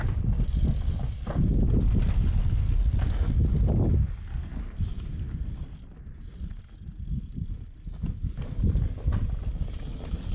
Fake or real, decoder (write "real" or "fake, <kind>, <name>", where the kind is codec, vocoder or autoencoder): real